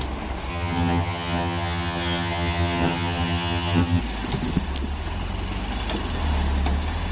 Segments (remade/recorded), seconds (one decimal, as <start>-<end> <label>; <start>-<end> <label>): 0.0-0.5 recorded; 0.5-4.0 remade; 4.0-7.1 recorded